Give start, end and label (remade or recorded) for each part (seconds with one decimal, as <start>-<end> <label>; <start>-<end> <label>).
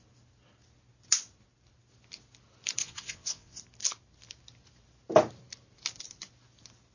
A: 0.0-2.8 recorded; 2.8-3.6 remade; 3.6-6.9 recorded